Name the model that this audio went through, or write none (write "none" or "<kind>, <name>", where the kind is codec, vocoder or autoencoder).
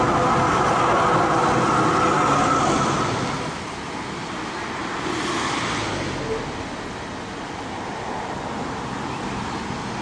none